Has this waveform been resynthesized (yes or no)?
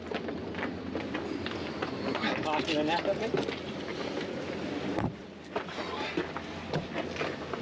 no